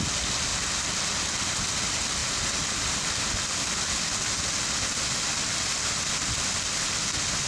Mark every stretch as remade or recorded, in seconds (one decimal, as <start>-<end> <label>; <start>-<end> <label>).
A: 0.0-7.5 recorded